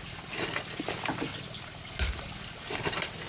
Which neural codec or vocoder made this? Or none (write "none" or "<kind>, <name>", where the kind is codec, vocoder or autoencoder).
none